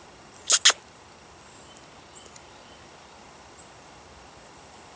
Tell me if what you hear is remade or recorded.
recorded